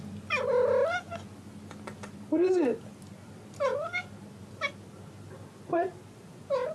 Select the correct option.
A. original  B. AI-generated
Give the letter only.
A